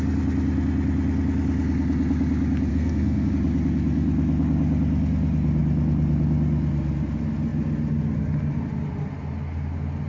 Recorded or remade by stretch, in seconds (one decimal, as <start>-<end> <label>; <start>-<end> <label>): 0.0-2.7 recorded; 2.7-3.3 remade; 3.3-10.1 recorded